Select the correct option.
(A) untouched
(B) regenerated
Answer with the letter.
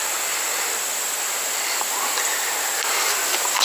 A